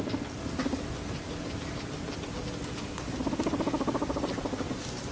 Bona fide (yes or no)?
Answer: yes